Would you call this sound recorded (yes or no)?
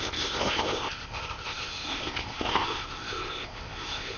no